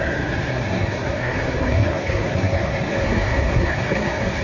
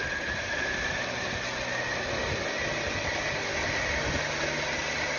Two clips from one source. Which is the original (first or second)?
second